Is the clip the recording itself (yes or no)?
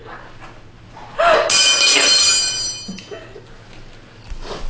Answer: yes